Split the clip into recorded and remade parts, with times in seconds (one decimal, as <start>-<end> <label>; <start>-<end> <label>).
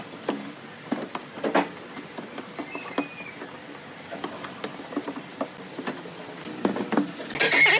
0.0-7.8 recorded